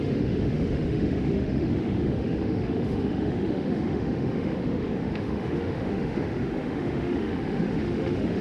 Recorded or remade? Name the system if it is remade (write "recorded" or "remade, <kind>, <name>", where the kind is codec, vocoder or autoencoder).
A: remade, autoencoder, DAC-VAE